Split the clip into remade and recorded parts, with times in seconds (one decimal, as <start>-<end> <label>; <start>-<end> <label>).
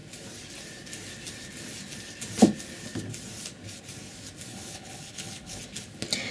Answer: 0.0-4.5 recorded; 4.5-5.6 remade; 5.6-6.3 recorded